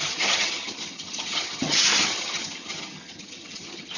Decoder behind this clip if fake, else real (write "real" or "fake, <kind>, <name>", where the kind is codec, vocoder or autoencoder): fake, vocoder, HiFi-GAN